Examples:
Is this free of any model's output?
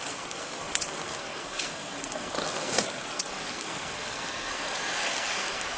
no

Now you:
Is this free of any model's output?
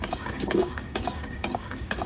no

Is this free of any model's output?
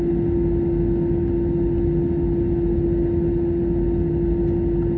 yes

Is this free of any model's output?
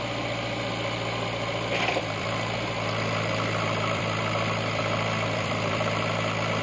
no